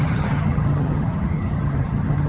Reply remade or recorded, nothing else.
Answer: remade